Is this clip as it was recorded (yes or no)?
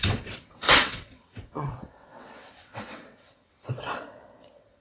no